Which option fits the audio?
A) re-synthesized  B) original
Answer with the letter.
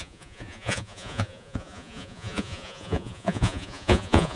A